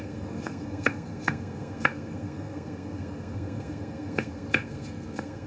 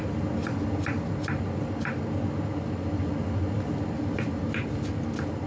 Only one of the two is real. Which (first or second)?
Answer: second